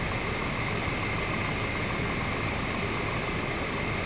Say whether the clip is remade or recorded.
recorded